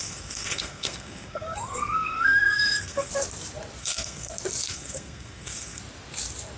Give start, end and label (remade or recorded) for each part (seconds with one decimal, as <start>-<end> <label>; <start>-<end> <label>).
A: 0.0-3.1 remade; 3.1-3.8 recorded; 3.8-4.3 remade; 4.3-4.7 recorded; 4.7-5.8 remade; 5.8-6.6 recorded